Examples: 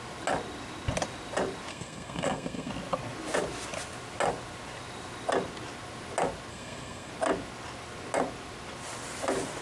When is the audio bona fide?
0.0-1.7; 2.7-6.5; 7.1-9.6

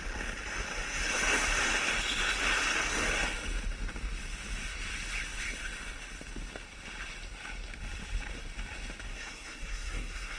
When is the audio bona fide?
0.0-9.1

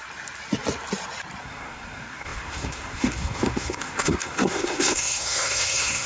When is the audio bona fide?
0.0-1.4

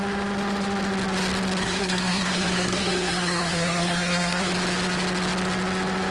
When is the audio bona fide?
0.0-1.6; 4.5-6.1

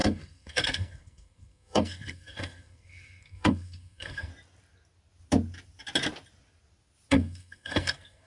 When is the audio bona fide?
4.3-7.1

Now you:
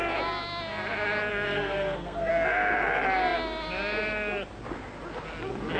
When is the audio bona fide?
0.0-1.3; 2.3-5.8

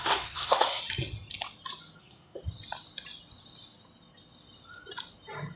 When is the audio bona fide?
0.8-2.0; 2.4-5.6